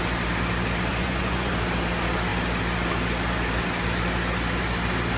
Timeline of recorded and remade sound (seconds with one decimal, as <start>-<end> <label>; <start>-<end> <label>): 0.0-0.9 recorded; 0.9-1.5 remade; 1.5-5.2 recorded